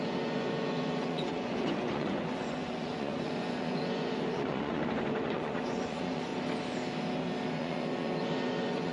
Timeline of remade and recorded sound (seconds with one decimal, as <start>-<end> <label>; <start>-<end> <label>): 0.0-6.3 remade; 6.3-7.6 recorded; 7.6-8.9 remade